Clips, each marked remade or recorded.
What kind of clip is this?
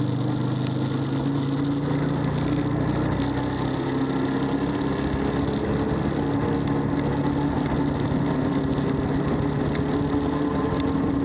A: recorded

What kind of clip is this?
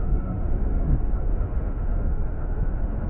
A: remade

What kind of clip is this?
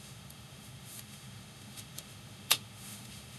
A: remade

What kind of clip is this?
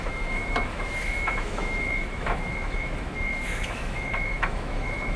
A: remade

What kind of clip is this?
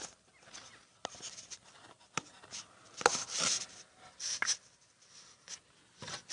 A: recorded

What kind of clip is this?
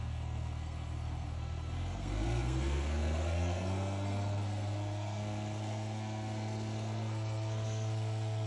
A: remade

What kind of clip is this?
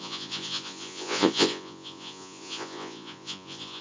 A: remade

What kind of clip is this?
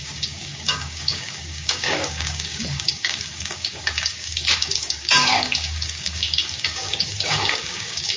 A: remade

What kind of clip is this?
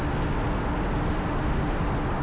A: recorded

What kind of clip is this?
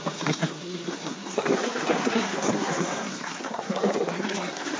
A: remade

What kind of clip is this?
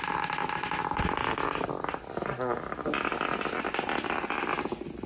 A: recorded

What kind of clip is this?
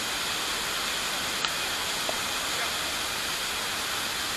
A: recorded